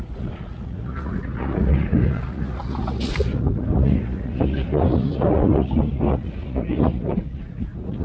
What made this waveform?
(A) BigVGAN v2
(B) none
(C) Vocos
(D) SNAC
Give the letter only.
C